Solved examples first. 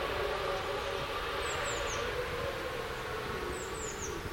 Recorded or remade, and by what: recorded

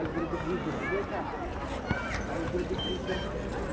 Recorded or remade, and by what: recorded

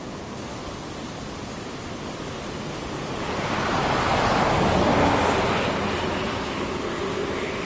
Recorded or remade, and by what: recorded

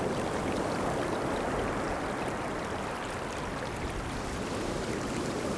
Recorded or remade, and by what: recorded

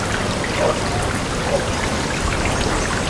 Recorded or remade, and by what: recorded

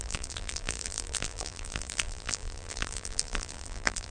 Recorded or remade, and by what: remade, vocoder, BigVGAN v2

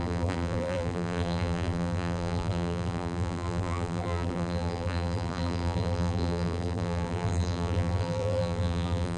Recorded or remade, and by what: remade, vocoder, BigVGAN v2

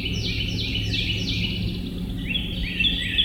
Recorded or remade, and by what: recorded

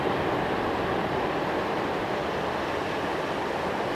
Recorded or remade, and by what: recorded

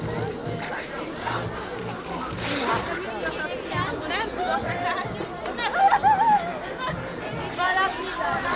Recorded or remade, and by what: recorded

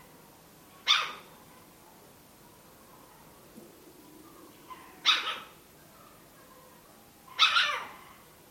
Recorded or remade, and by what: recorded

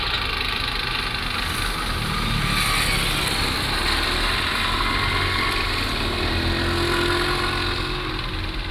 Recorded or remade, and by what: recorded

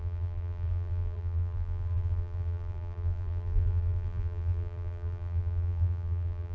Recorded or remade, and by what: remade, vocoder, BigVGAN v2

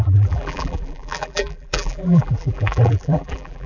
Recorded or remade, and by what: remade, vocoder, BigVGAN v2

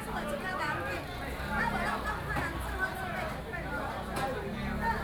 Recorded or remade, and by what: recorded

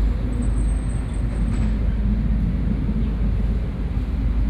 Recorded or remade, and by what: recorded